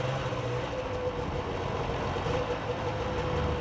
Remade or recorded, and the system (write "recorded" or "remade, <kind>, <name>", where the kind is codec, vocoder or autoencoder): recorded